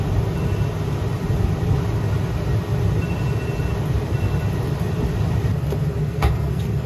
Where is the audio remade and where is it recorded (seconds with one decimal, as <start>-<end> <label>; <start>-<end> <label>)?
0.0-6.0 recorded; 6.0-6.9 remade